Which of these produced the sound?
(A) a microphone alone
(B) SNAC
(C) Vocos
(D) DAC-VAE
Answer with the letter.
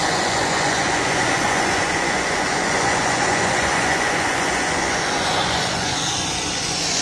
C